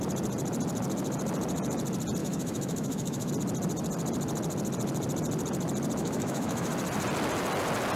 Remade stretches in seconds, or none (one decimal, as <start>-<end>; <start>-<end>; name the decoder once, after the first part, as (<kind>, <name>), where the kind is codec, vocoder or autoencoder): 2.2-3.3 (autoencoder, DAC-VAE); 6.0-6.7